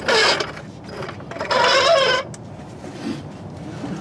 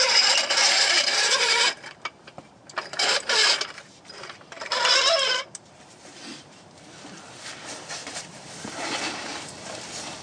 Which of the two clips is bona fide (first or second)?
first